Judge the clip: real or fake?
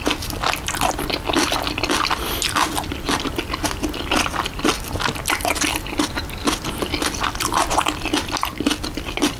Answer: real